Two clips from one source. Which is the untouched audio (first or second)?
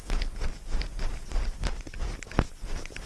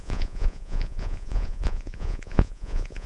first